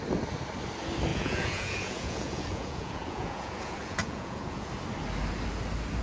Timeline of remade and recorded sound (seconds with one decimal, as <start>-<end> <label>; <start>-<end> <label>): 0.0-1.1 recorded; 1.1-4.7 remade; 4.7-6.0 recorded